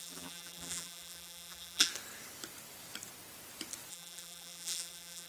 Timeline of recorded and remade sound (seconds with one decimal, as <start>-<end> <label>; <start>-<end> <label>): 0.0-1.9 remade; 1.9-3.9 recorded; 3.9-5.3 remade